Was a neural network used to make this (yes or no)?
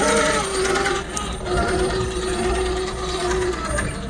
no